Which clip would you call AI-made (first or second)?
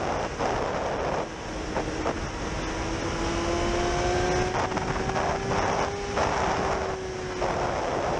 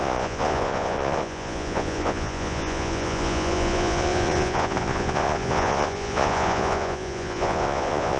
second